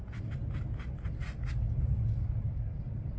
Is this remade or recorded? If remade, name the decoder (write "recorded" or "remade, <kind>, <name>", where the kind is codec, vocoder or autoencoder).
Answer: recorded